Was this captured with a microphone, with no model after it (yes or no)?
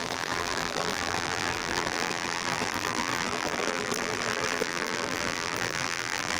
no